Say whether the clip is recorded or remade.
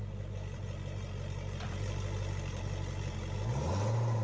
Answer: recorded